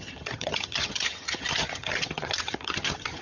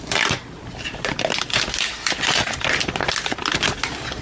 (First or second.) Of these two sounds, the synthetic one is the first